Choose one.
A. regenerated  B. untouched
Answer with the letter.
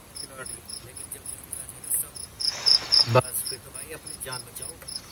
B